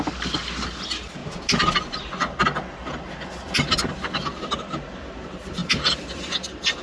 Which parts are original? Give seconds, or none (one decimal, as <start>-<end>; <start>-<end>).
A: 0.0-6.8